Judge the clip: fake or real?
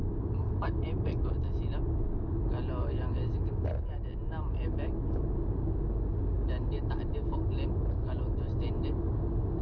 real